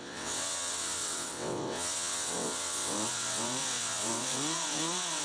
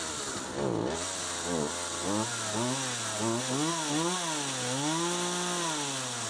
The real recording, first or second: second